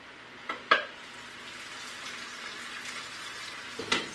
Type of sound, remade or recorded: recorded